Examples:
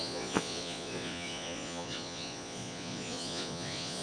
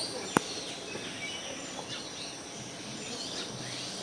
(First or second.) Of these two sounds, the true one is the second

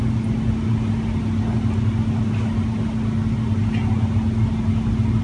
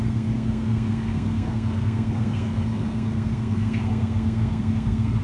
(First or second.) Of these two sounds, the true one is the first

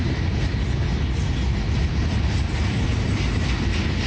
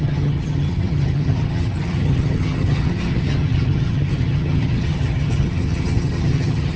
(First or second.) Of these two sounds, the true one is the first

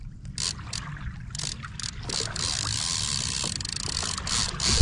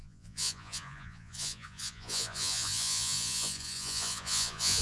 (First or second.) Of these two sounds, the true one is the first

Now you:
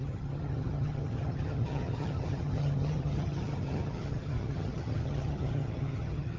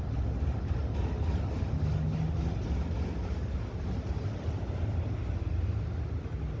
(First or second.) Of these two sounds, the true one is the second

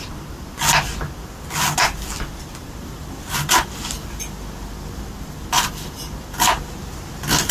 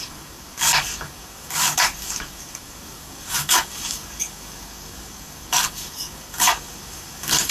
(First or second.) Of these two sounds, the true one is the first